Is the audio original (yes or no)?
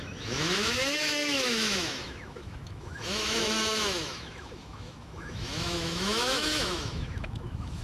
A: no